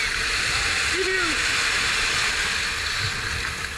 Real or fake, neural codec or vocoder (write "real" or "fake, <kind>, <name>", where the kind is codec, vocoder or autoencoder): real